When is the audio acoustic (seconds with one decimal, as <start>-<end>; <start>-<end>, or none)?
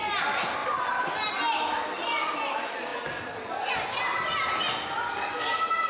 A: 0.0-5.9